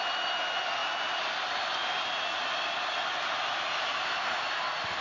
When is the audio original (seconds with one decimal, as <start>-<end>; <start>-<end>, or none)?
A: 0.0-5.0